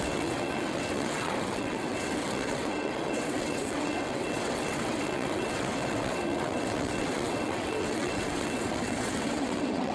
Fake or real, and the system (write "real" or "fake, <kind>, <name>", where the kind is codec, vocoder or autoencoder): fake, vocoder, WaveNeXt